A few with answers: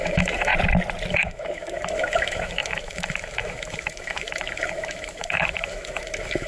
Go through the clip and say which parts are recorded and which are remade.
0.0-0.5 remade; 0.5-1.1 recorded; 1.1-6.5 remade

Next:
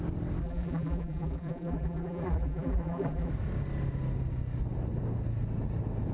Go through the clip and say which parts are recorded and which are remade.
0.0-0.4 recorded; 0.4-3.3 remade; 3.3-6.1 recorded

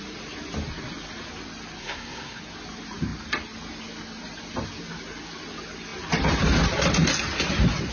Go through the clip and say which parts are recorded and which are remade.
0.0-1.8 recorded; 1.8-2.4 remade; 2.4-7.9 recorded

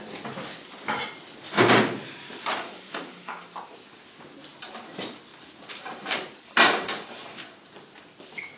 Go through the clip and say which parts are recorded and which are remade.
0.0-5.3 recorded; 5.3-7.6 remade; 7.6-8.6 recorded

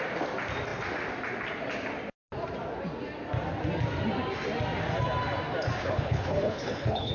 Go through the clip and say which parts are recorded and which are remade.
0.0-5.8 recorded; 5.8-7.1 remade